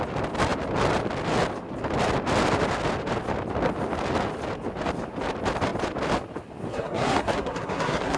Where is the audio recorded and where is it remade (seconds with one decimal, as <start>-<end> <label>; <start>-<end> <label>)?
0.0-6.7 recorded; 6.7-8.2 remade

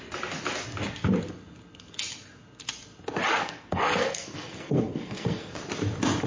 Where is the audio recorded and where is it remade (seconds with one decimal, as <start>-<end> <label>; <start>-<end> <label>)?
0.0-3.4 recorded; 3.4-5.6 remade; 5.6-6.3 recorded